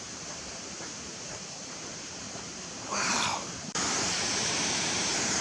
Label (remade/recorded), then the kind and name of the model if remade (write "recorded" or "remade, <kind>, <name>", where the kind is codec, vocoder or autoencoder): remade, vocoder, BigVGAN v2